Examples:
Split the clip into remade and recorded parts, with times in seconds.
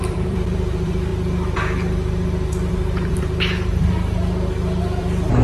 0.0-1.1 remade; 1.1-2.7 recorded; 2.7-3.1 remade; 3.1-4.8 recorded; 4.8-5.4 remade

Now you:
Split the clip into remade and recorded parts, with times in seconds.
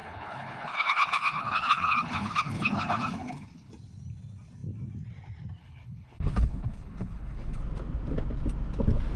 0.0-3.7 remade; 3.7-5.6 recorded; 5.6-7.6 remade; 7.6-9.2 recorded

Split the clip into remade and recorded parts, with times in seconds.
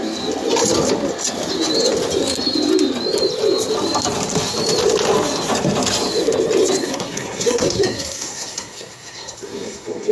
0.0-6.8 recorded; 6.8-10.1 remade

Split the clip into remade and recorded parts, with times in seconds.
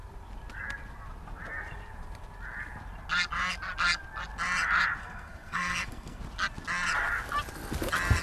0.0-5.0 recorded; 5.0-6.2 remade; 6.2-8.2 recorded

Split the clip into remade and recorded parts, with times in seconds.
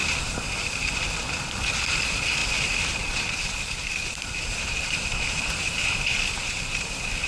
0.0-7.3 remade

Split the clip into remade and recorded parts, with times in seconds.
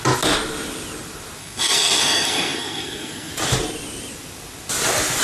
0.0-1.4 recorded; 1.4-3.3 remade; 3.3-5.2 recorded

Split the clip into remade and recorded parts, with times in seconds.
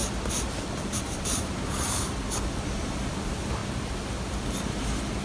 0.0-0.7 recorded; 0.7-3.6 remade; 3.6-4.2 recorded; 4.2-5.2 remade